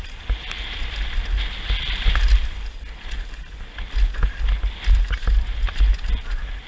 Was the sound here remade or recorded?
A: recorded